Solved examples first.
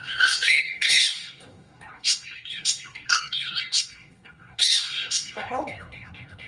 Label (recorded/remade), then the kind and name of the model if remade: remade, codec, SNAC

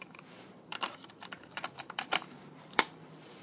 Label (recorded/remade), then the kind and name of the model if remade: remade, vocoder, BigVGAN v2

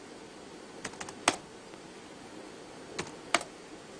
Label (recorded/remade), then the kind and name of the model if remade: recorded